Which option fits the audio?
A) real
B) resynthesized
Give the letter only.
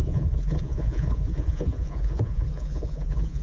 B